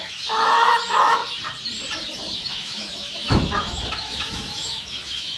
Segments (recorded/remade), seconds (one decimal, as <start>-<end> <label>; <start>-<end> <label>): 0.0-1.2 remade; 1.2-2.5 recorded; 2.5-5.4 remade

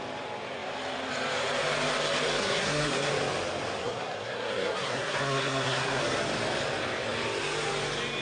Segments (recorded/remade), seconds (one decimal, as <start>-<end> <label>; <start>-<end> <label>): 0.0-2.4 recorded; 2.4-3.1 remade; 3.1-3.8 recorded; 3.8-6.0 remade; 6.0-8.2 recorded

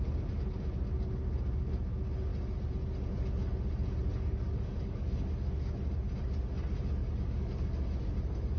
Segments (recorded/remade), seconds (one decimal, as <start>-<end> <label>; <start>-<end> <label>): 0.0-4.1 recorded; 4.1-5.8 remade; 5.8-7.0 recorded; 7.0-8.1 remade; 8.1-8.6 recorded

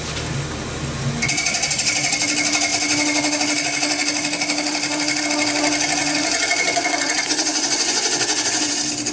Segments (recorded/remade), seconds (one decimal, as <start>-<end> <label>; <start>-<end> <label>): 0.0-6.0 recorded; 6.0-8.7 remade; 8.7-9.1 recorded

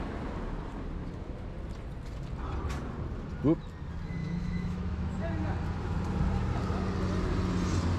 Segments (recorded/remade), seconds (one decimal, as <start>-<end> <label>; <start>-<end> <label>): 0.0-4.2 recorded; 4.2-5.2 remade; 5.2-8.0 recorded

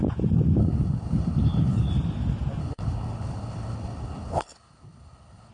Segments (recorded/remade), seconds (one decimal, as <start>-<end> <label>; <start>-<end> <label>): 0.0-0.6 recorded; 0.6-1.9 remade; 1.9-2.6 recorded; 2.6-5.5 remade

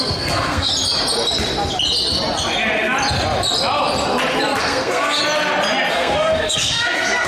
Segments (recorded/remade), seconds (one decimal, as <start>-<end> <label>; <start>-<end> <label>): 0.0-0.7 remade; 0.7-4.6 recorded; 4.6-5.2 remade; 5.2-5.9 recorded; 5.9-7.3 remade

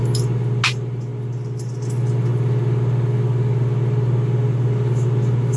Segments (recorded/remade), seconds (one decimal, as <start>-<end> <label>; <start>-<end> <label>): 0.0-5.6 recorded